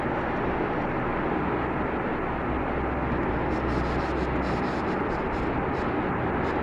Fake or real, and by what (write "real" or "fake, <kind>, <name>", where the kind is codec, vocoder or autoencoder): real